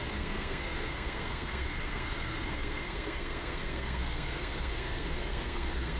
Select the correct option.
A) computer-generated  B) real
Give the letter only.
A